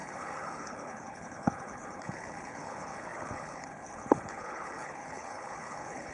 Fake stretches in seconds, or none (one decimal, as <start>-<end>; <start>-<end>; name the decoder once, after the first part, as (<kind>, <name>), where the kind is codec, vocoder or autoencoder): 0.0-6.1 (codec, HILCodec)